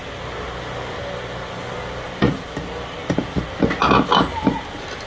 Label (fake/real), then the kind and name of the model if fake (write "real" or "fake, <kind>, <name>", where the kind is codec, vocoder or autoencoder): real